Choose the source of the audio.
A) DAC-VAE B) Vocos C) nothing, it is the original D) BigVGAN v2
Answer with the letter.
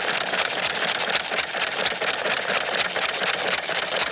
C